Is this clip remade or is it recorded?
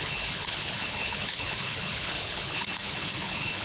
remade